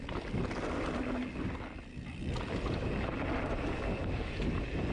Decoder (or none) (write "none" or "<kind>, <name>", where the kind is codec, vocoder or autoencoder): none